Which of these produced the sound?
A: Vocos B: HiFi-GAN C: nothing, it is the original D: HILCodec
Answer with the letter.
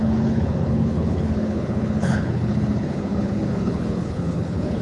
D